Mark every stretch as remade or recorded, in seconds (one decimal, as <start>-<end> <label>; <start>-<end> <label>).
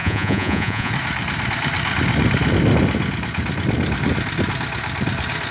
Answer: 0.0-0.9 remade; 0.9-5.5 recorded